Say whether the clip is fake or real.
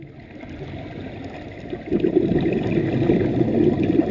real